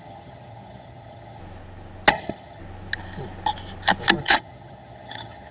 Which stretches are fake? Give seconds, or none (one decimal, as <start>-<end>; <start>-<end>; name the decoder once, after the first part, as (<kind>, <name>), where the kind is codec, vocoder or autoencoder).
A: 0.0-1.4 (vocoder, HiFi-GAN); 2.1-2.6; 4.2-5.5